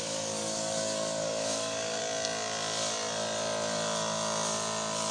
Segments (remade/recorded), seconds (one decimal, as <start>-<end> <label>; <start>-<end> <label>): 0.0-2.0 remade; 2.0-5.1 recorded